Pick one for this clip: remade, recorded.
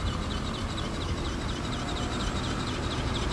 recorded